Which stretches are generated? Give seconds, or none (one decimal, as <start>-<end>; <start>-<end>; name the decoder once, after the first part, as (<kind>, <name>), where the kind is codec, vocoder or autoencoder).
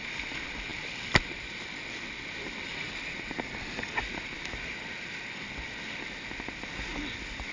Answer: 0.7-3.0 (vocoder, BigVGAN v2)